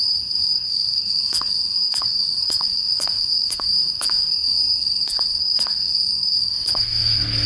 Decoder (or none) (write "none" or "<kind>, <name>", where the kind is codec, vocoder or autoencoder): codec, SNAC